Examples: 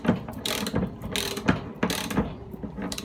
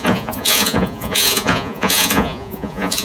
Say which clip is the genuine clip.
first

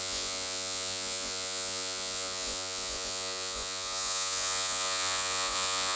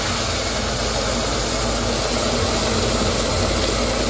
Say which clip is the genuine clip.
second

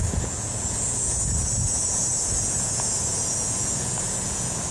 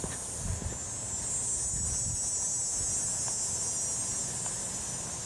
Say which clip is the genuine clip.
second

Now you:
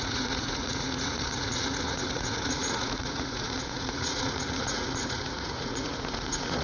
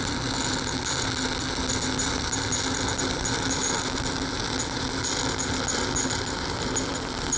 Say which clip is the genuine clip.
second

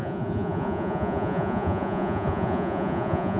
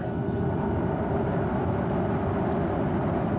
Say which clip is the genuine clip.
second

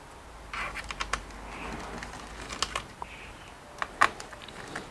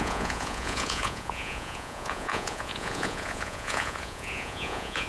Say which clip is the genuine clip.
first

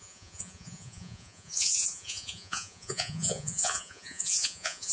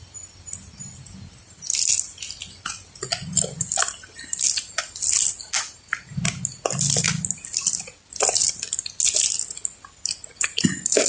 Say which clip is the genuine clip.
second